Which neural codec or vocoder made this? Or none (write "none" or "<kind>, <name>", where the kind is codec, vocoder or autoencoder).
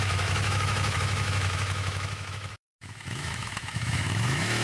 autoencoder, DAC-VAE